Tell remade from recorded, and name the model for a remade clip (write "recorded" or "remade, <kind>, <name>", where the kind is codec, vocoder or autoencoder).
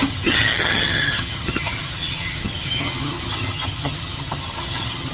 remade, vocoder, HiFi-GAN